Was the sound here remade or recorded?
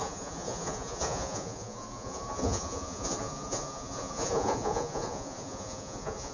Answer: remade